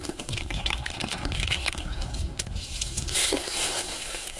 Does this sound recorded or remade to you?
remade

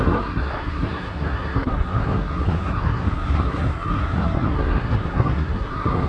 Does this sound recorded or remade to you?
remade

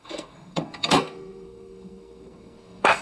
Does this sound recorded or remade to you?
remade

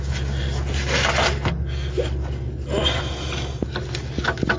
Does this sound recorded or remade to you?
recorded